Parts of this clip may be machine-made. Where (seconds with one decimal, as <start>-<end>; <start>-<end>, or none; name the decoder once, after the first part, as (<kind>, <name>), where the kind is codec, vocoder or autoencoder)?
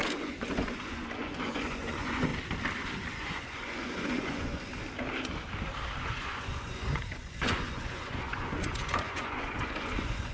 0.0-2.3 (vocoder, Vocos); 3.1-4.7; 6.0-10.3